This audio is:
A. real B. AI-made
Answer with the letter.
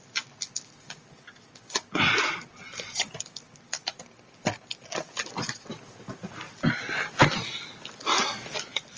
A